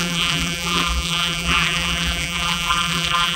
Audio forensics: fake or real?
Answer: fake